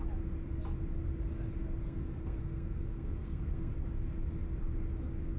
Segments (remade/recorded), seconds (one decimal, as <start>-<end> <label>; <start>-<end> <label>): 0.0-1.8 recorded; 1.8-3.7 remade; 3.7-5.4 recorded